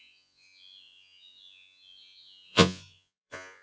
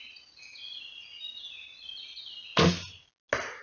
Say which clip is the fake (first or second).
first